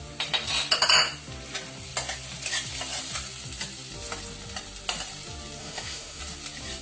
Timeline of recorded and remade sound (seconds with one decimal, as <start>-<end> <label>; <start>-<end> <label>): 0.0-5.6 recorded; 5.6-6.2 remade; 6.2-6.8 recorded